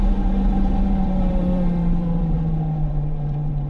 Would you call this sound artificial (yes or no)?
yes